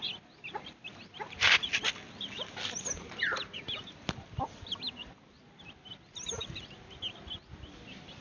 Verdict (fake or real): real